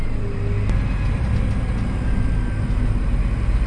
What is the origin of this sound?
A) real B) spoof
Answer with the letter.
A